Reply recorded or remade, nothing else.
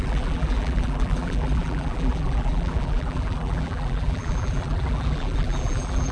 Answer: remade